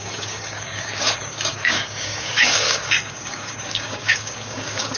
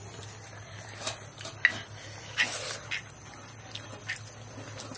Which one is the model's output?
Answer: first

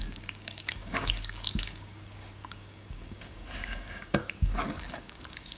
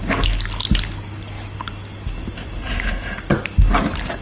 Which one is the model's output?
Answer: first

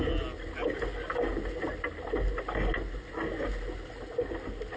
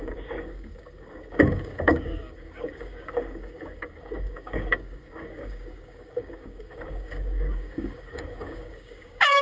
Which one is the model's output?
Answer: second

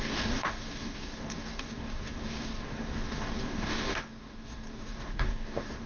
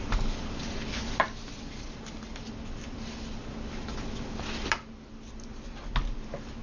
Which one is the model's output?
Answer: first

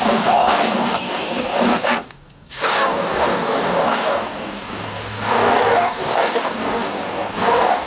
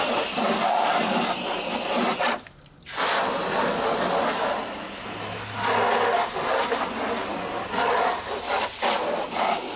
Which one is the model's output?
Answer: first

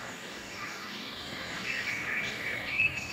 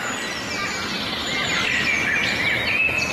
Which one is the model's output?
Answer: first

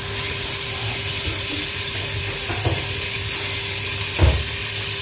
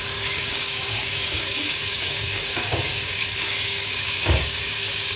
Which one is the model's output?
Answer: second